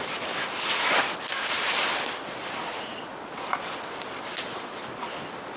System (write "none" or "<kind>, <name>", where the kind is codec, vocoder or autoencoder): none